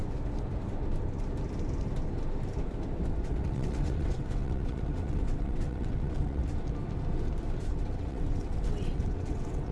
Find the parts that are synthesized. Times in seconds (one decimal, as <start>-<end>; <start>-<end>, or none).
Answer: 3.3-6.4; 7.7-9.7